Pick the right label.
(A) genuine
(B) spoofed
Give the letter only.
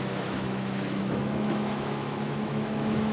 B